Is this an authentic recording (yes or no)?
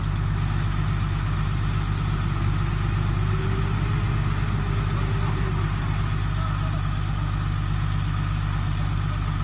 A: yes